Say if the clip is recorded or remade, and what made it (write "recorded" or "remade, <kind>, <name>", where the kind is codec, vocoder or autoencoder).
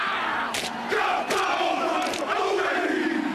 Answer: remade, vocoder, BigVGAN v2